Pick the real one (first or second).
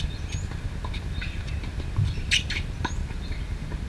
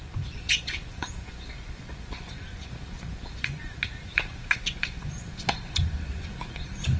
first